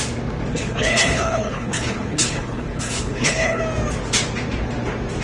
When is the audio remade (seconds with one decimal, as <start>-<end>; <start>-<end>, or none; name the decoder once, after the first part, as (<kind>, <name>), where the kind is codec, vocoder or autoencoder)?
0.5-3.6 (codec, HILCodec)